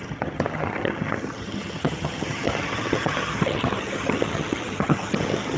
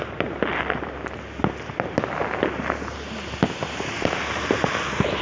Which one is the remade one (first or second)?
first